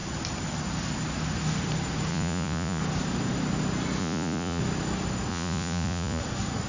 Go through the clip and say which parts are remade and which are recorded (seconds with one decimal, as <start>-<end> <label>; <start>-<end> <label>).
0.0-2.1 recorded; 2.1-2.8 remade; 2.8-4.0 recorded; 4.0-4.6 remade; 4.6-5.3 recorded; 5.3-6.2 remade; 6.2-6.7 recorded